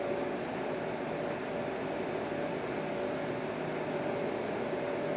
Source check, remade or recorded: recorded